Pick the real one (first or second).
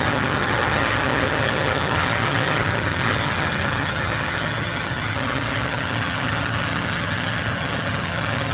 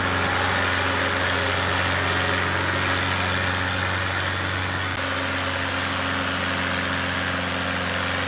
second